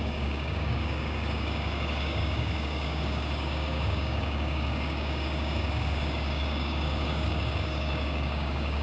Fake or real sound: fake